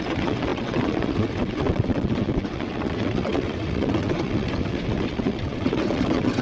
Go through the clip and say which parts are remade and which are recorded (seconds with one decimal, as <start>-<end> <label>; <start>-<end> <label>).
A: 0.0-6.4 remade